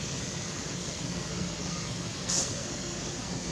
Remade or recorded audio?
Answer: remade